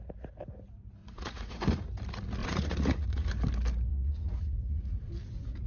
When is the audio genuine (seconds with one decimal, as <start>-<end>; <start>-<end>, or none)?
0.0-1.0; 1.9-2.4; 3.3-3.9; 5.1-5.7